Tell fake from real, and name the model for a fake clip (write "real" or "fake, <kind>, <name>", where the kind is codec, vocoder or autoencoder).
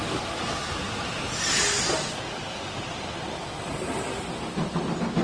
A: real